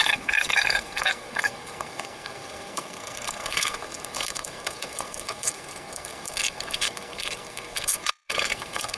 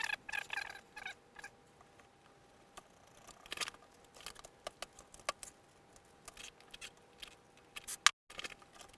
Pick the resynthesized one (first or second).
first